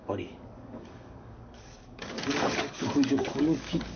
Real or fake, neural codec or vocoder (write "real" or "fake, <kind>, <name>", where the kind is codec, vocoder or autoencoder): fake, codec, DAC